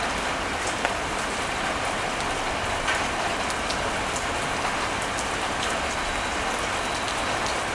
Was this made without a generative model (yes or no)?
yes